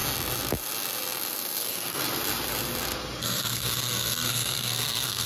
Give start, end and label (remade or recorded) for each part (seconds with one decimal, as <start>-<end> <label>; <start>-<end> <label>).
0.0-1.6 recorded; 1.6-2.0 remade; 2.0-3.2 recorded; 3.2-5.3 remade

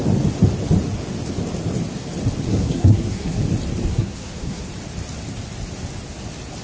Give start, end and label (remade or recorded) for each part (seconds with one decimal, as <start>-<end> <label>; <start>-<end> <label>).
0.0-2.5 recorded; 2.5-3.4 remade; 3.4-3.9 recorded; 3.9-4.7 remade; 4.7-6.6 recorded

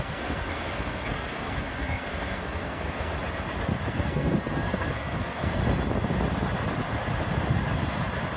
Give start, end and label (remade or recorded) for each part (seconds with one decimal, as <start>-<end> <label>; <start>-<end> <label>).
0.0-3.1 remade; 3.1-3.9 recorded; 3.9-5.6 remade; 5.6-8.4 recorded

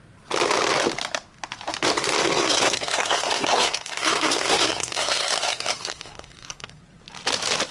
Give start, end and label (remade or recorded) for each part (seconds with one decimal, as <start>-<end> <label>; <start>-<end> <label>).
0.0-2.2 recorded; 2.2-6.8 remade; 6.8-7.7 recorded